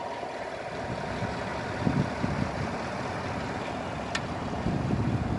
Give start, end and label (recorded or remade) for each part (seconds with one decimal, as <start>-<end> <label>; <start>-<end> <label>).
0.0-5.4 recorded

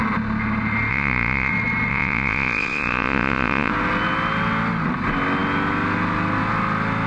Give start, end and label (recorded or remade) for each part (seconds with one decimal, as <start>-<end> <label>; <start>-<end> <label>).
0.0-0.9 recorded; 0.9-1.5 remade; 1.5-1.9 recorded; 1.9-3.7 remade; 3.7-7.1 recorded

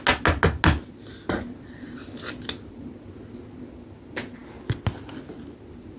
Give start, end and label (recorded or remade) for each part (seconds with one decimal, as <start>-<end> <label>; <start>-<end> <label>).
0.0-6.0 recorded

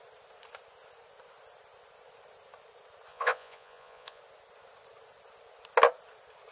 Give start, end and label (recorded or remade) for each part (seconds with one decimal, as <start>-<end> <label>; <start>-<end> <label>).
0.0-3.1 recorded; 3.1-4.2 remade; 4.2-6.5 recorded

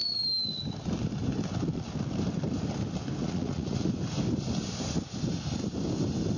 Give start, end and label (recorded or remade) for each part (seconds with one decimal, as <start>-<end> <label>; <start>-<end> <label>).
0.0-3.2 recorded; 3.2-3.9 remade; 3.9-6.4 recorded

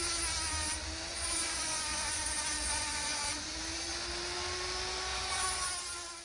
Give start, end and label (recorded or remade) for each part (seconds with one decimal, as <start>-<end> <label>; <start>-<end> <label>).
0.0-1.1 recorded; 1.1-3.5 remade; 3.5-5.1 recorded; 5.1-5.7 remade; 5.7-6.2 recorded

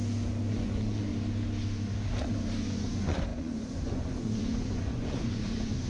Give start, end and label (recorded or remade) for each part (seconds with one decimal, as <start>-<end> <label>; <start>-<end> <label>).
0.0-0.5 recorded; 0.5-1.1 remade; 1.1-2.6 recorded; 2.6-5.9 remade

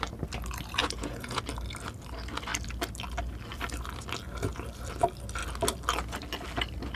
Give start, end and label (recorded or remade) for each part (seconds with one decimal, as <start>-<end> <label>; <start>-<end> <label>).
0.0-0.8 recorded; 0.8-1.4 remade; 1.4-7.0 recorded